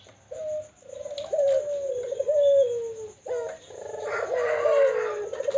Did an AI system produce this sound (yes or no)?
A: no